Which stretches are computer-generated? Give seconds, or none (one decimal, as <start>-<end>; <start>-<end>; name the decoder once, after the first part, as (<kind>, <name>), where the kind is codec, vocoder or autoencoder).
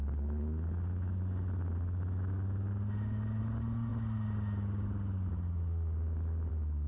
none